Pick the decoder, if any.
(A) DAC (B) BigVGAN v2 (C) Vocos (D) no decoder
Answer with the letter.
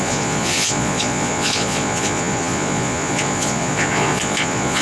C